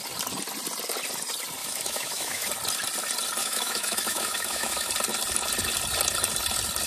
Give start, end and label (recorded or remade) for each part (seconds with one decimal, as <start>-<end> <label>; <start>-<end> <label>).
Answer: 0.0-1.6 recorded; 1.6-2.5 remade; 2.5-3.4 recorded; 3.4-4.9 remade; 4.9-6.9 recorded